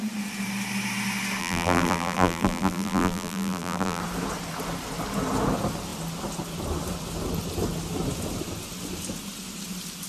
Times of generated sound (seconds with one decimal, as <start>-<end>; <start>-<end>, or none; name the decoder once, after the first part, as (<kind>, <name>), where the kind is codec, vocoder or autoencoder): 1.4-4.0 (vocoder, BigVGAN v2)